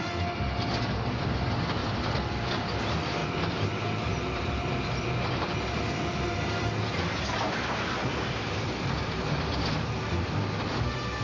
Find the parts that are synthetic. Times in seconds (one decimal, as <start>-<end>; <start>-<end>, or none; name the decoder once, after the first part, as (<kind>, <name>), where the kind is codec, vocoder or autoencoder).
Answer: 1.8-2.5 (vocoder, BigVGAN v2); 3.2-6.7; 8.0-9.7